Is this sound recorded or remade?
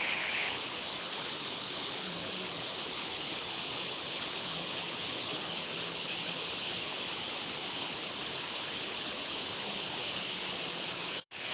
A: remade